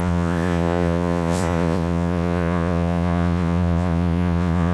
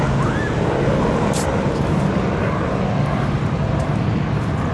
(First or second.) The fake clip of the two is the first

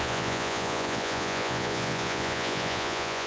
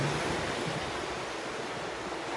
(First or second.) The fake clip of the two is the first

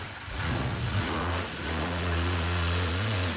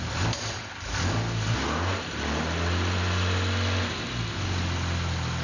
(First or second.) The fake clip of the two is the first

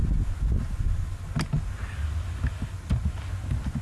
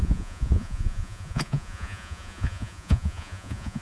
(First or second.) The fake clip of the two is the second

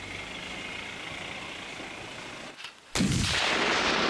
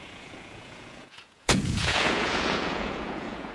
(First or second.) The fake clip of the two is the second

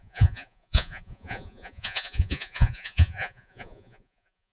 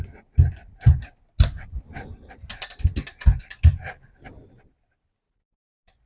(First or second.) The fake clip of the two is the first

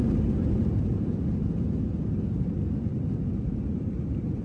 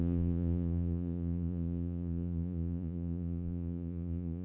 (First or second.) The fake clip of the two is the second